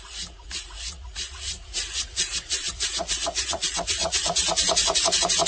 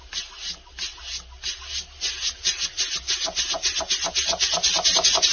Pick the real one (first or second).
second